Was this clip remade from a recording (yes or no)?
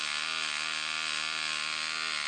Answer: no